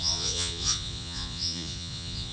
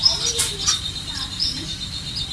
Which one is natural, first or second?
second